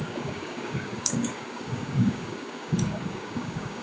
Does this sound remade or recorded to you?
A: remade